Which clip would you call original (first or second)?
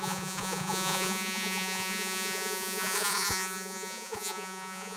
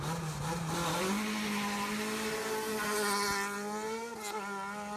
second